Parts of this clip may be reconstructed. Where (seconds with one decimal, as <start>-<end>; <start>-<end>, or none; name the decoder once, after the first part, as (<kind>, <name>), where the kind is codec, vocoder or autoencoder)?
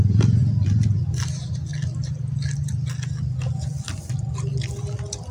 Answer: 0.0-0.4 (vocoder, BigVGAN v2); 1.1-1.7; 3.9-4.5